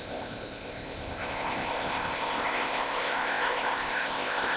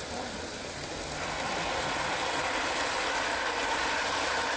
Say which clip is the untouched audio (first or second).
second